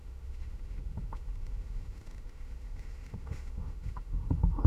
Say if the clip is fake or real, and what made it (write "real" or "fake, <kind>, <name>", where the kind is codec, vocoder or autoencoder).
fake, autoencoder, DAC-VAE